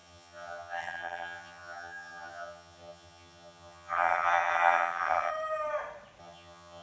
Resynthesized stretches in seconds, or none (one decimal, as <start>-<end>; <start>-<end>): 0.0-5.3; 6.2-6.8